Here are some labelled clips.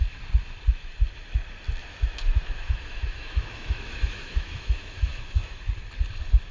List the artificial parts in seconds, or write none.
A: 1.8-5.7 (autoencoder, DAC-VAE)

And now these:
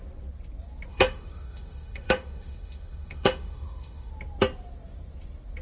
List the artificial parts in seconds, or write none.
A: 0.9-4.1 (autoencoder, DAC-VAE)